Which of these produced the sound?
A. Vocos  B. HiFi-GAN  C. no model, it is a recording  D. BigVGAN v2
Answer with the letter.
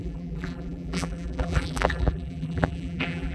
D